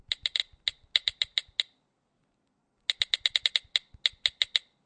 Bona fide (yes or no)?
yes